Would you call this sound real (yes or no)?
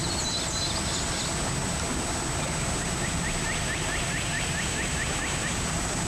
yes